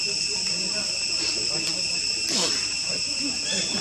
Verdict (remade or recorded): recorded